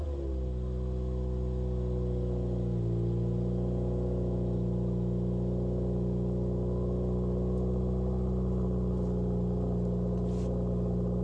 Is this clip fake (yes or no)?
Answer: no